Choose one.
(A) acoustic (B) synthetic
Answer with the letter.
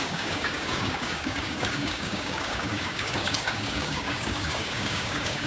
B